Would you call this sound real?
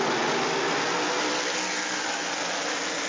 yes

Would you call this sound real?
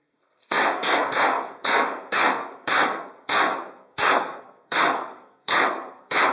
no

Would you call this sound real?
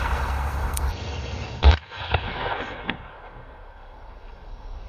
no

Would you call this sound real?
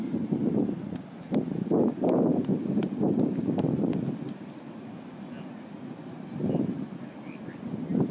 yes